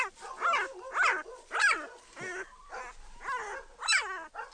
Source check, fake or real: real